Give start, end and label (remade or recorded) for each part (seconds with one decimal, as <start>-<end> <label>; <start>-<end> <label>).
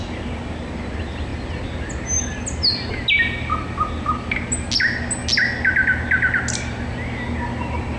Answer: 0.0-8.0 recorded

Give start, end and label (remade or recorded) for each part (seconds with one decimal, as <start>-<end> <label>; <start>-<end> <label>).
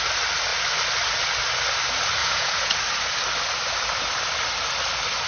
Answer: 0.0-2.2 recorded; 2.2-2.7 remade; 2.7-5.3 recorded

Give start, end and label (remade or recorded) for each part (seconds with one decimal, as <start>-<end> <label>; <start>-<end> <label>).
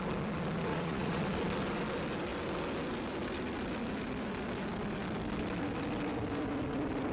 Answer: 0.0-0.7 recorded; 0.7-1.2 remade; 1.2-7.1 recorded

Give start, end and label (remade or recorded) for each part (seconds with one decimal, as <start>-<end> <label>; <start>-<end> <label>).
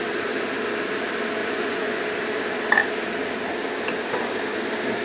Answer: 0.0-1.4 recorded; 1.4-2.0 remade; 2.0-5.0 recorded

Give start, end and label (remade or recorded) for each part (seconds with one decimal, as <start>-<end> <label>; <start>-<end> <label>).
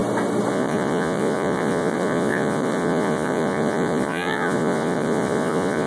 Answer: 0.0-0.5 recorded; 0.5-5.9 remade